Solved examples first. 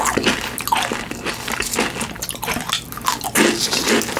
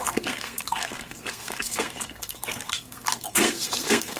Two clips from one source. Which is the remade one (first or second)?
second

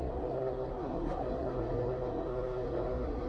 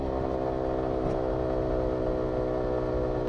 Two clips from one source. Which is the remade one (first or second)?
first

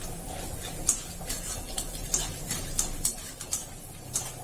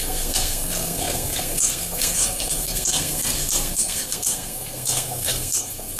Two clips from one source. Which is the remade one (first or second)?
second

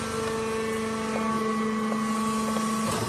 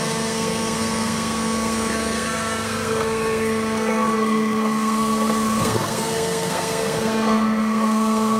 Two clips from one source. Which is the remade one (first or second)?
second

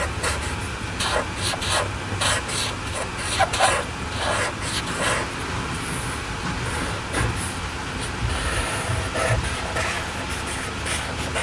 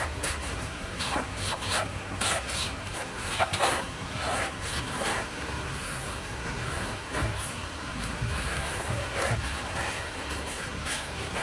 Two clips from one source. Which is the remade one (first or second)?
second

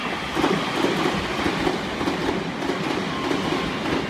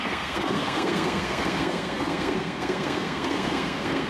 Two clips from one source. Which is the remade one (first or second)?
second